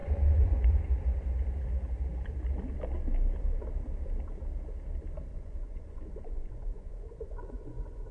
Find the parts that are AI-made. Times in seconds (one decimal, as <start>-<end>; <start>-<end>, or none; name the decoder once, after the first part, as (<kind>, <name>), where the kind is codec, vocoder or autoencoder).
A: 0.0-0.8 (vocoder, Vocos); 5.3-8.1